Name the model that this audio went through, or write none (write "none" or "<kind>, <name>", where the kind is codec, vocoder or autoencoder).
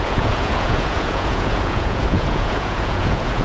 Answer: vocoder, Vocos